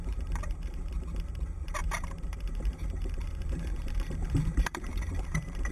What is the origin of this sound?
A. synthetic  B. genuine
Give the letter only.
A